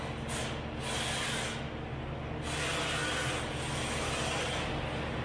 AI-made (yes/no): no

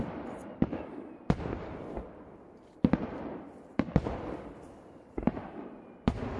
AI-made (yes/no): yes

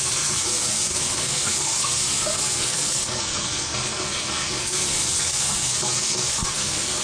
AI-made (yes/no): yes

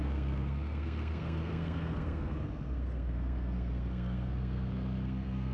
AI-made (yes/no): yes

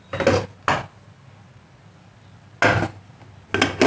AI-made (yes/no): no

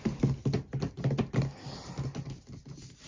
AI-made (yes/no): no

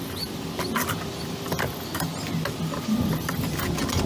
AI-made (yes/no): no